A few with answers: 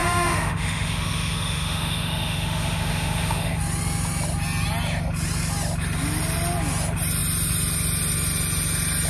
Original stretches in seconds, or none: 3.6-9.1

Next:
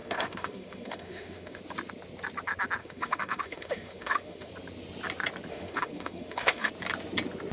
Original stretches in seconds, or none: 1.6-2.8; 4.5-5.5; 6.7-7.5

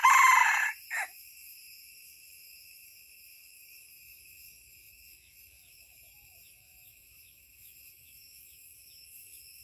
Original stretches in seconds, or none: 0.0-0.9

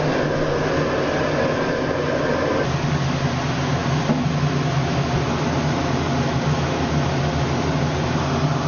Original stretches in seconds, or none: 0.0-8.7

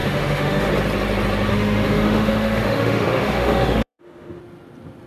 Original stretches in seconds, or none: 0.7-1.5; 4.4-5.1